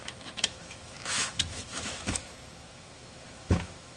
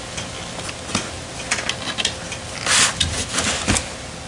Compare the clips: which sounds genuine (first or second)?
second